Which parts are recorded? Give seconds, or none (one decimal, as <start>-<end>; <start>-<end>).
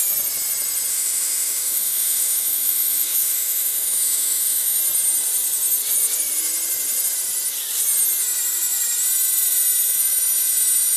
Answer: 0.0-0.9; 4.8-11.0